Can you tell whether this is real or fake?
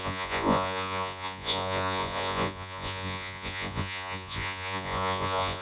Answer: fake